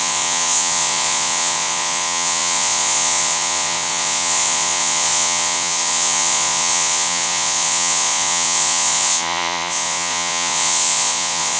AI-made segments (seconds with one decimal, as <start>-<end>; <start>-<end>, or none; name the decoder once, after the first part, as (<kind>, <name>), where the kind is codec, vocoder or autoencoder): 0.0-11.6 (vocoder, Vocos)